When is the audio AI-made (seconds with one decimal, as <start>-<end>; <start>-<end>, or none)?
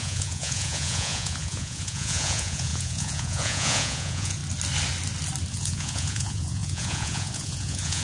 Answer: 0.0-4.4; 5.5-8.0